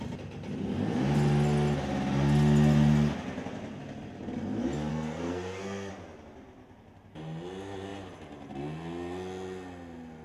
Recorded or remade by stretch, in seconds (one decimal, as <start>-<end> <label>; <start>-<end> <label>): 0.0-4.9 recorded; 4.9-5.9 remade; 5.9-10.2 recorded